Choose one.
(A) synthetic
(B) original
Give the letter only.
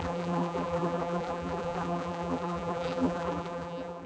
A